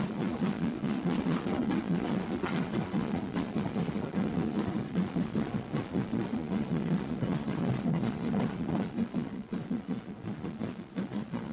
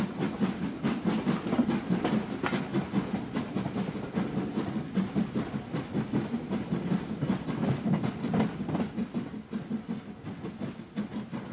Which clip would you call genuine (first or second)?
second